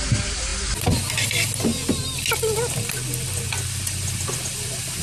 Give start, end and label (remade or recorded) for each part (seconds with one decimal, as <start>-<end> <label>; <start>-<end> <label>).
0.0-5.0 recorded